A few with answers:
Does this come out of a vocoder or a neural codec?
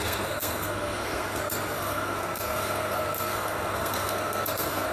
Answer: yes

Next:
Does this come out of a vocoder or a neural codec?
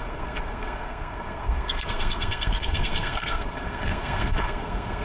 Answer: yes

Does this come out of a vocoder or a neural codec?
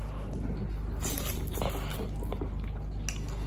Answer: no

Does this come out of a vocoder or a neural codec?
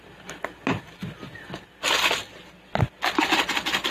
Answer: no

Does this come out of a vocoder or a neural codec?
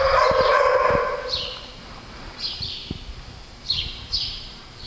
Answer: yes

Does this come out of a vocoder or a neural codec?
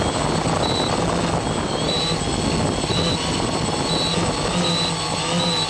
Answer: no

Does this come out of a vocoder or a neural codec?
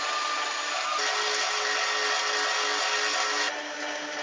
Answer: no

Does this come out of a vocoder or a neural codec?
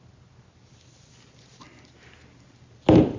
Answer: no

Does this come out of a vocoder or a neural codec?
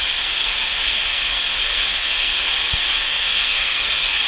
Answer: yes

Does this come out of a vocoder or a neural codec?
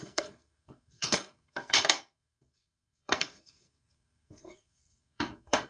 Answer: yes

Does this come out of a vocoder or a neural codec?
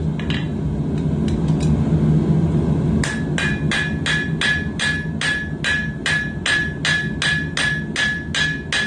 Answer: no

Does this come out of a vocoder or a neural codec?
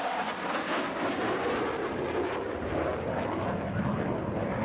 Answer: no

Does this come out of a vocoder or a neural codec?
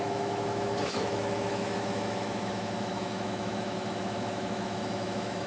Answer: yes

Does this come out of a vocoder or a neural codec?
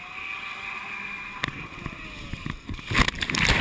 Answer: no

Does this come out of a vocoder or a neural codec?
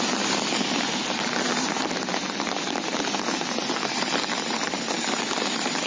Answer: no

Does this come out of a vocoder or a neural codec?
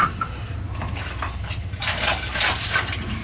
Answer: no